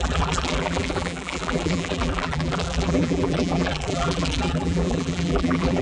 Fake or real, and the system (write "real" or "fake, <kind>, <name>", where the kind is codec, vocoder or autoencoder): fake, vocoder, BigVGAN v2